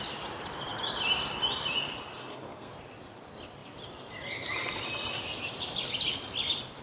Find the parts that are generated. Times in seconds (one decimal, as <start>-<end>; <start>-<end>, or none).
2.2-2.7